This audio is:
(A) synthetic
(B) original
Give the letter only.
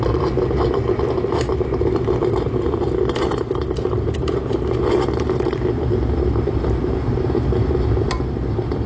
B